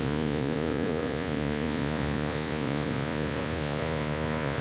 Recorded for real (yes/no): no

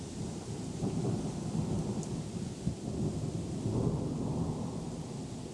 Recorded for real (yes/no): yes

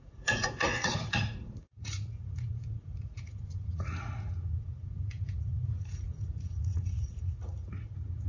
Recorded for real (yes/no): no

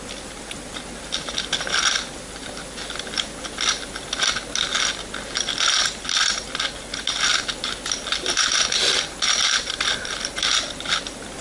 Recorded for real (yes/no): yes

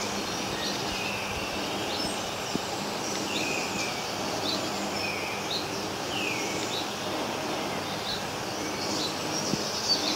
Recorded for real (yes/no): yes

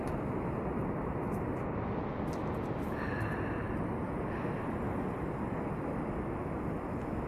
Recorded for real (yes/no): yes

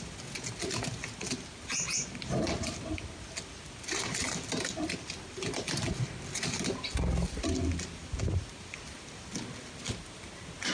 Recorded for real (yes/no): yes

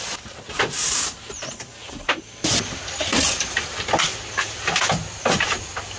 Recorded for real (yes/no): yes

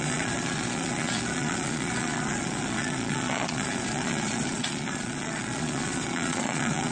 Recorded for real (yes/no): no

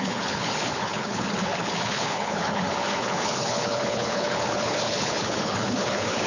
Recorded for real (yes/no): no